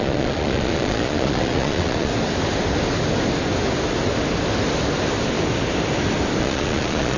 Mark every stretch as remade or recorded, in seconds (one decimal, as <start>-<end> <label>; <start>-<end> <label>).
0.0-2.1 remade; 2.1-6.4 recorded; 6.4-7.2 remade

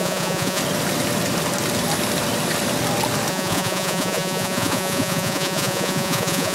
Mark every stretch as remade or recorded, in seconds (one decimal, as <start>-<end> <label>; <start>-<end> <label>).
0.0-0.6 remade; 0.6-3.3 recorded; 3.3-6.5 remade

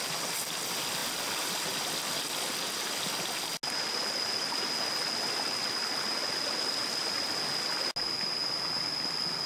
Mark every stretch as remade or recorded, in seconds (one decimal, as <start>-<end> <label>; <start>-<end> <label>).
0.0-9.5 recorded

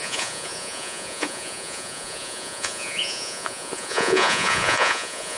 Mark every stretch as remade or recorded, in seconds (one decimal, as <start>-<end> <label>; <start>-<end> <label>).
0.0-5.4 remade

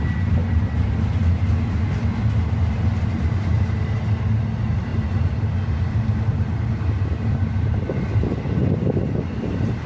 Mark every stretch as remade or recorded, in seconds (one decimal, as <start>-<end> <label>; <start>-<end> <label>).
0.0-9.9 recorded